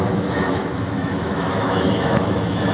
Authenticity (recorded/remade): remade